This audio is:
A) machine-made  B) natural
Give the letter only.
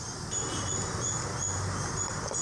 B